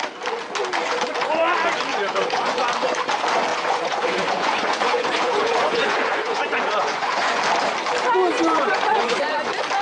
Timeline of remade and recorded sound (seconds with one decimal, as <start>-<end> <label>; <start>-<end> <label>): 0.0-1.9 recorded; 1.9-2.7 remade; 2.7-3.5 recorded; 3.5-7.4 remade; 7.4-8.2 recorded; 8.2-9.2 remade; 9.2-9.8 recorded

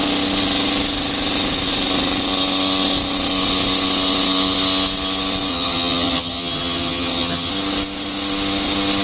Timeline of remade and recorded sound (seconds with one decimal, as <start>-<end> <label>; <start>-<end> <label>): 0.0-5.5 recorded; 5.5-7.5 remade; 7.5-9.0 recorded

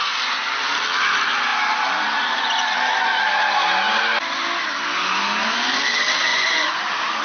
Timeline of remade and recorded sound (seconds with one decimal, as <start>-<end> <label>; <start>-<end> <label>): 0.0-6.3 recorded; 6.3-6.8 remade; 6.8-7.2 recorded

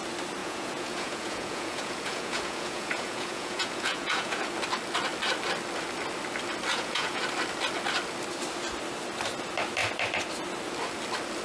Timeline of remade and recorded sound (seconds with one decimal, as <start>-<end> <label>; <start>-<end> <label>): 0.0-0.4 recorded; 0.4-4.5 remade; 4.5-6.7 recorded; 6.7-7.2 remade; 7.2-11.4 recorded

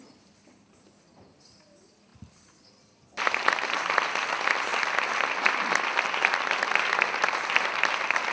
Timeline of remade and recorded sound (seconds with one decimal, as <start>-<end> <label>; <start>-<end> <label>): 0.0-2.1 recorded; 2.1-3.4 remade; 3.4-4.7 recorded; 4.7-6.6 remade; 6.6-8.3 recorded

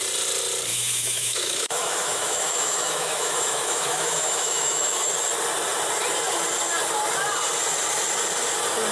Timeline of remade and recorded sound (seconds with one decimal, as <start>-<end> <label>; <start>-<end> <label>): 0.0-0.7 recorded; 0.7-5.1 remade; 5.1-8.9 recorded